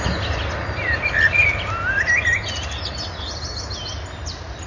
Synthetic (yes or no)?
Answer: no